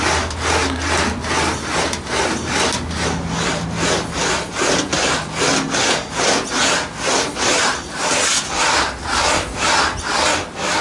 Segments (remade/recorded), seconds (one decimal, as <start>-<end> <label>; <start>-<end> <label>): 0.0-7.5 recorded; 7.5-8.1 remade; 8.1-10.8 recorded